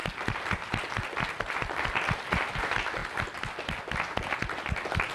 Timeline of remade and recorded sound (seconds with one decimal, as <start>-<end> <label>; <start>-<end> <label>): 0.0-5.1 recorded